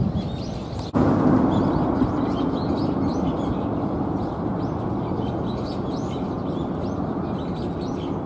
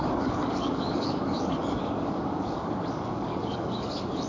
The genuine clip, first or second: first